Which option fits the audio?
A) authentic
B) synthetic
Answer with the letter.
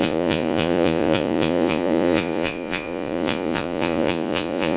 B